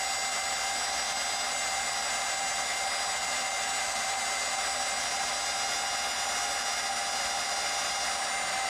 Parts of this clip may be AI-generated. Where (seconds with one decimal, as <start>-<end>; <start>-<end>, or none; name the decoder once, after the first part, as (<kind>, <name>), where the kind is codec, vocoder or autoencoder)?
none